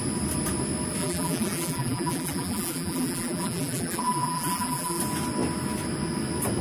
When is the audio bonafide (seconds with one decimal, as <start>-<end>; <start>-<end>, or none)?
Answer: 0.0-1.0; 5.0-6.6